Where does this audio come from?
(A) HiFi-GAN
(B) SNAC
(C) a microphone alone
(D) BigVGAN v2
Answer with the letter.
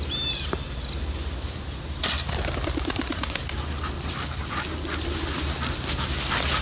C